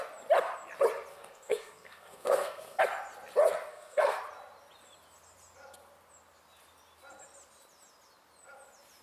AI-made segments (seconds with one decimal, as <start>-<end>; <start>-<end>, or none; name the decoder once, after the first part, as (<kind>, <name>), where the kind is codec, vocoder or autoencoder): 1.1-2.8 (codec, SNAC); 3.7-4.2